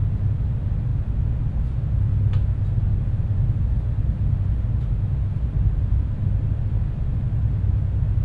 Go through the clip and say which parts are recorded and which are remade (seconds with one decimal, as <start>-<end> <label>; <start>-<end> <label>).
0.0-8.2 recorded